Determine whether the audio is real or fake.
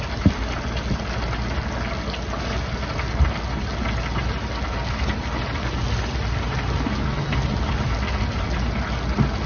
real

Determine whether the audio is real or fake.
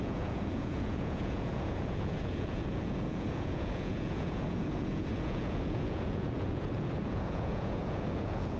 fake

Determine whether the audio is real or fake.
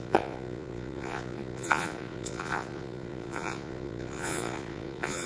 fake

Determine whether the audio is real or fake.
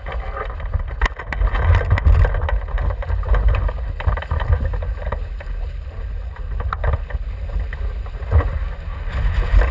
real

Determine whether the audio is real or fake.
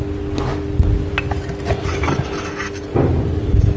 real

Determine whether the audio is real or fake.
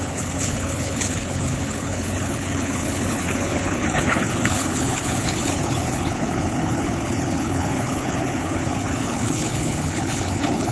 fake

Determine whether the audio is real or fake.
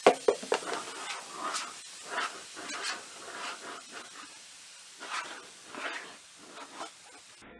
real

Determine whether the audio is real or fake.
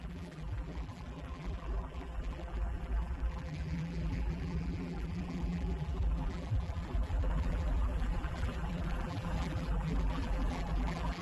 fake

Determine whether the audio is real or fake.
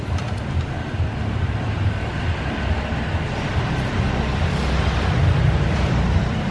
fake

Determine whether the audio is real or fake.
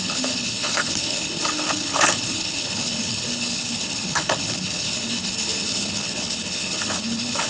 fake